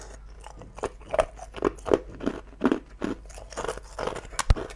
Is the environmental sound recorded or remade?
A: recorded